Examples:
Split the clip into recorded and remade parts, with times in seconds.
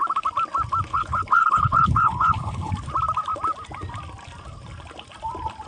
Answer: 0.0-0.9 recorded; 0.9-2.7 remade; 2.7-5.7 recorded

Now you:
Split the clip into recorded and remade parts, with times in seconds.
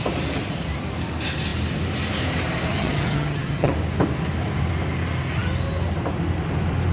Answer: 0.0-2.7 recorded; 2.7-3.7 remade; 3.7-6.9 recorded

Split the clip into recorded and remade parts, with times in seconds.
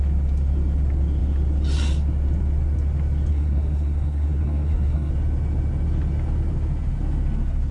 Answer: 0.0-3.3 recorded; 3.3-5.1 remade; 5.1-7.7 recorded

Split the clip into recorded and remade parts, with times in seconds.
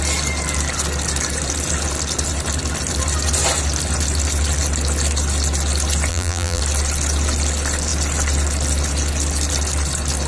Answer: 0.0-6.1 recorded; 6.1-6.6 remade; 6.6-10.3 recorded